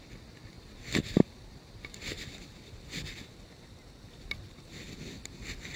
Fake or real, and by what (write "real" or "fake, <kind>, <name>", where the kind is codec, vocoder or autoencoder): real